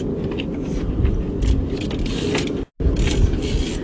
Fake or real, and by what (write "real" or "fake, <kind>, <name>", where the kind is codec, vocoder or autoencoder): real